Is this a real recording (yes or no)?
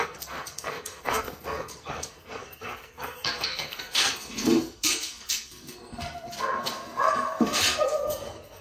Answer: no